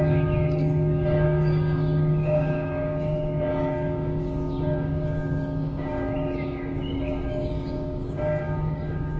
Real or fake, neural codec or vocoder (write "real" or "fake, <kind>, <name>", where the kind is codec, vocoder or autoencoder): fake, codec, DAC